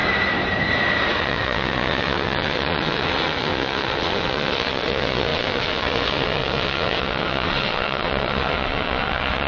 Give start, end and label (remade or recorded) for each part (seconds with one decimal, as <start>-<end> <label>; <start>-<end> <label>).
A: 0.0-1.2 recorded; 1.2-9.5 remade